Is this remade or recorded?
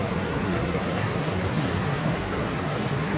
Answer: remade